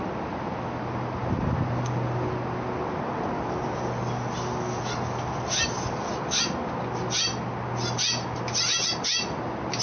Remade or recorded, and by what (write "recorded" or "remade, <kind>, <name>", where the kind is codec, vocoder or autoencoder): recorded